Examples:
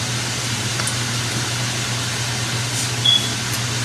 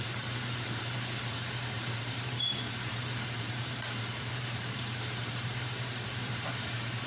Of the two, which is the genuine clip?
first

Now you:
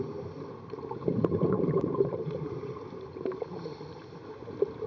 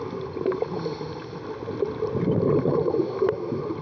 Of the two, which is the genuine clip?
second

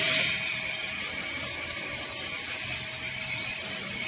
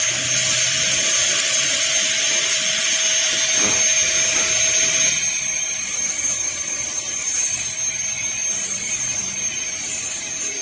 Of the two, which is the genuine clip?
first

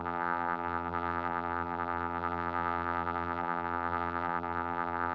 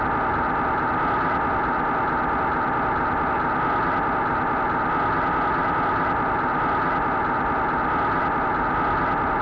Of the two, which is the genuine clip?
second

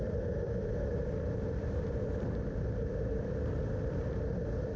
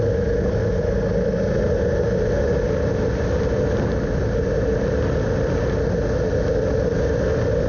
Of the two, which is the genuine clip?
second